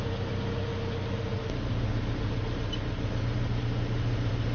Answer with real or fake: real